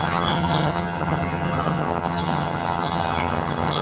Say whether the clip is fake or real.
fake